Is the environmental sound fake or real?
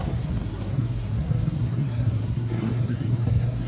fake